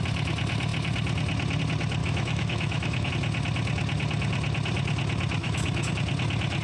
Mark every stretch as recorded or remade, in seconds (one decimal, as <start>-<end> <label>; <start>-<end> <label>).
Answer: 0.0-2.0 recorded; 2.0-3.1 remade; 3.1-5.4 recorded; 5.4-5.9 remade; 5.9-6.6 recorded